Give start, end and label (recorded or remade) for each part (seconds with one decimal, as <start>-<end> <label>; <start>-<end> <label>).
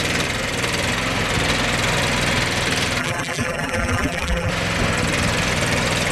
0.0-3.0 recorded; 3.0-4.5 remade; 4.5-6.1 recorded